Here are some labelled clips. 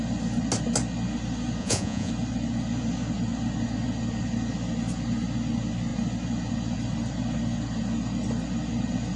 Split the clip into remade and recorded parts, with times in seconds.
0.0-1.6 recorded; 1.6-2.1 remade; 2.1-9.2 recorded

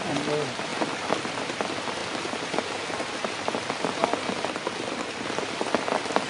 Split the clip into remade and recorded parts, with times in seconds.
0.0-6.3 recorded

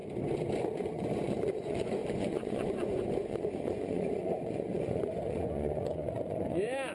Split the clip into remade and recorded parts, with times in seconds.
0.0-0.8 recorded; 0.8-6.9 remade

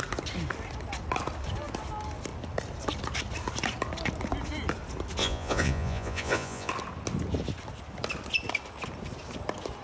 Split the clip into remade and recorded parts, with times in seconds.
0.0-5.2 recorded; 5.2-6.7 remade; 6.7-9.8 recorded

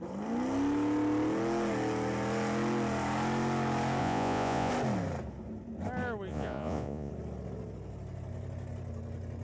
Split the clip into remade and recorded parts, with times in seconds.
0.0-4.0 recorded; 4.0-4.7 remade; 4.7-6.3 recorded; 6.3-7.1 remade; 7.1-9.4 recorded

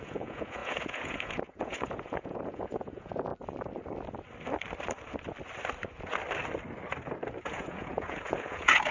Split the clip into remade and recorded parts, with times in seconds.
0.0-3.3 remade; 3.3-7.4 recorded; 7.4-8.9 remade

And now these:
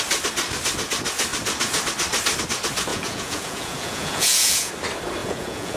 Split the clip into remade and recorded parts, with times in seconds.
0.0-2.9 recorded; 2.9-4.7 remade; 4.7-5.2 recorded; 5.2-5.8 remade